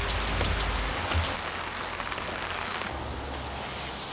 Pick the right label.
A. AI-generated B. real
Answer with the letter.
B